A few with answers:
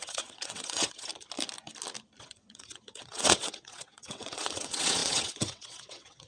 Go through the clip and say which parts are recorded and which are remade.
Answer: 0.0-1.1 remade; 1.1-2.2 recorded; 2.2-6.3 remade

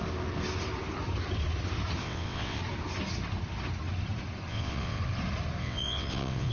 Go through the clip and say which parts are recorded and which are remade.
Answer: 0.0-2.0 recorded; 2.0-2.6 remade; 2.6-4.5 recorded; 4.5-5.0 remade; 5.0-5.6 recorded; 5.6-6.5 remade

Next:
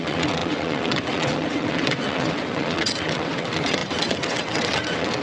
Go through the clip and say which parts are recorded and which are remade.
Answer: 0.0-5.2 remade

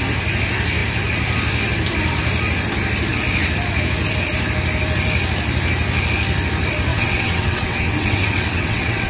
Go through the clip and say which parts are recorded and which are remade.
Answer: 0.0-6.9 recorded; 6.9-9.1 remade

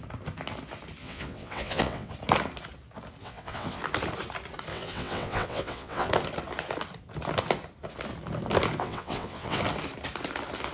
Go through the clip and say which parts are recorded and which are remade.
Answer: 0.0-1.0 recorded; 1.0-2.1 remade; 2.1-3.2 recorded; 3.2-3.8 remade; 3.8-4.7 recorded; 4.7-6.1 remade; 6.1-8.8 recorded; 8.8-9.6 remade; 9.6-10.7 recorded

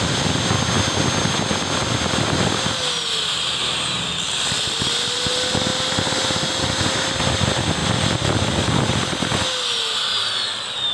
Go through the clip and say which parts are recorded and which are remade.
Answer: 0.0-10.9 recorded

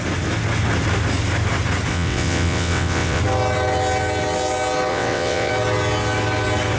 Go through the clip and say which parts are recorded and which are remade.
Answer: 0.0-1.9 recorded; 1.9-3.2 remade; 3.2-4.9 recorded; 4.9-5.5 remade; 5.5-6.8 recorded